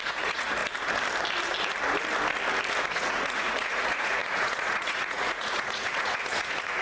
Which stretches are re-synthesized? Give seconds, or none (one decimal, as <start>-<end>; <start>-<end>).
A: 0.0-0.6; 2.9-6.8